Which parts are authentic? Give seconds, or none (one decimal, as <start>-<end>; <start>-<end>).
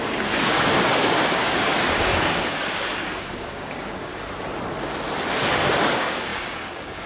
4.1-5.5